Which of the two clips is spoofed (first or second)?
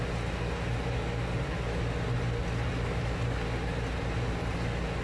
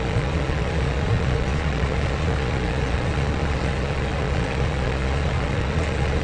second